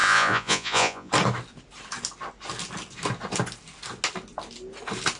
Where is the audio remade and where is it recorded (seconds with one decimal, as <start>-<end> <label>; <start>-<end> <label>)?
0.0-1.1 remade; 1.1-5.2 recorded